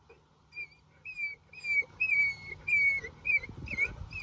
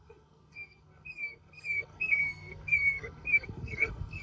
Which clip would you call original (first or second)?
first